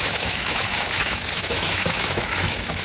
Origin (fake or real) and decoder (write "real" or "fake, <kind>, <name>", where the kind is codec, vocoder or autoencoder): fake, autoencoder, DAC-VAE